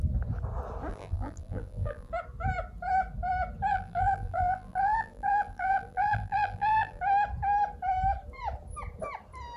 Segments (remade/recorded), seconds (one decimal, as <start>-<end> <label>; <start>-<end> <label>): 0.0-0.9 recorded; 0.9-2.1 remade; 2.1-3.7 recorded; 3.7-7.0 remade; 7.0-9.6 recorded